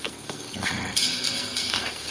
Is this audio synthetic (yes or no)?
yes